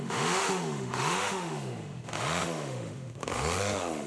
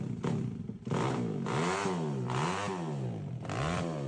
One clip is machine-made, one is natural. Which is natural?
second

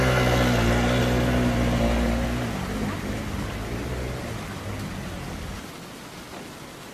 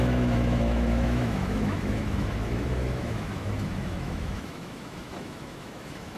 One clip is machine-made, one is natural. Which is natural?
first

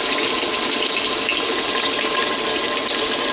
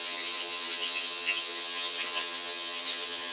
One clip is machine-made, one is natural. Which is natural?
first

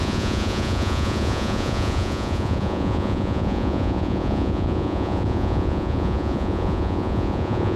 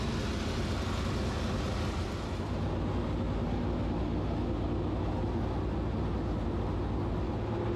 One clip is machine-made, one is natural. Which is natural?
second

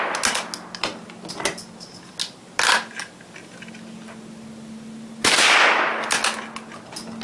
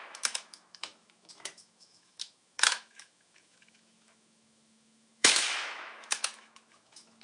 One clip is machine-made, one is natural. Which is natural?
first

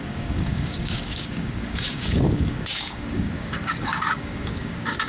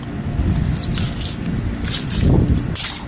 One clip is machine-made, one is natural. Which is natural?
second